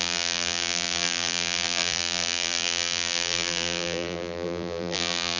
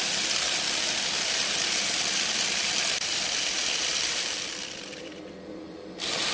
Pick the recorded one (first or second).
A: second